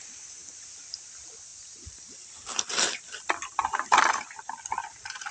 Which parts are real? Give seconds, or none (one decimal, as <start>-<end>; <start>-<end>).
0.0-0.4; 0.9-1.5; 4.7-5.3